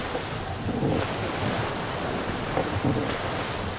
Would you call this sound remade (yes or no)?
no